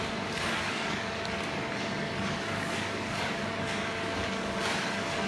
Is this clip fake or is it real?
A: fake